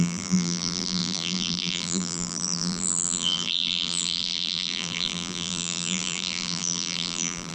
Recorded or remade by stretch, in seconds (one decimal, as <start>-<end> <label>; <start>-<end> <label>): 0.0-7.5 remade